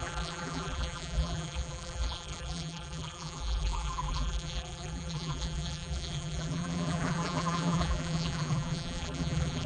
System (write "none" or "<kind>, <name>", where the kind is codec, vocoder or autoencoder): vocoder, BigVGAN v2